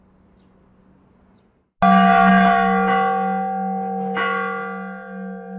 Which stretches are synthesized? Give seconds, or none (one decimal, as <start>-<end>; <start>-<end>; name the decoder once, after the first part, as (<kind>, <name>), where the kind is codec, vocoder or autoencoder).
none

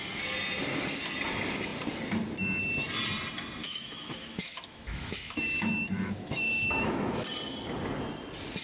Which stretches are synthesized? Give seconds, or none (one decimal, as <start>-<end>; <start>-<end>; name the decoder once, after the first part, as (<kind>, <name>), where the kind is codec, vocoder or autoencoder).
3.6-6.9 (autoencoder, DAC-VAE)